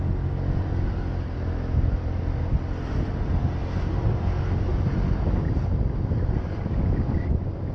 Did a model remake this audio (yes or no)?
no